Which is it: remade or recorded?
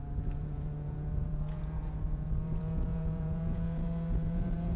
remade